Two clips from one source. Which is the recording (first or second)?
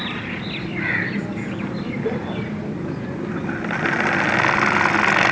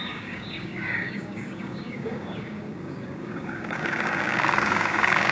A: first